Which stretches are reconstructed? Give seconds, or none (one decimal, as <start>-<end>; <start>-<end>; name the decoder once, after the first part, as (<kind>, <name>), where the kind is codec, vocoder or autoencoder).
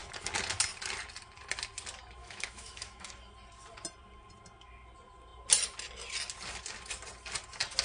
2.2-3.1 (autoencoder, DAC-VAE)